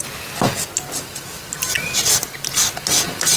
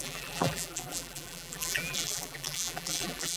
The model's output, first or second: second